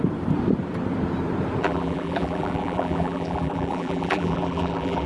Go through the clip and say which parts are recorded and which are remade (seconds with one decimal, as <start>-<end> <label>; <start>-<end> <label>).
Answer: 0.0-1.6 recorded; 1.6-5.1 remade